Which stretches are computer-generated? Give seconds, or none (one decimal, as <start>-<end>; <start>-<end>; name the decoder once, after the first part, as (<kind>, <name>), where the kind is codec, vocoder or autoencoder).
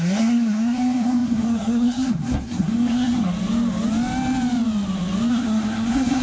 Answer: 0.0-3.3 (codec, SNAC); 5.3-6.2